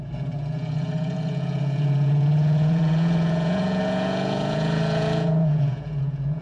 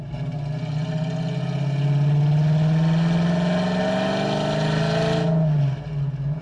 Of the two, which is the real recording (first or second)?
second